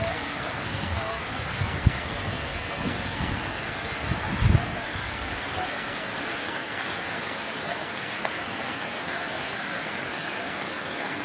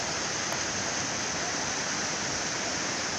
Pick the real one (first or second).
second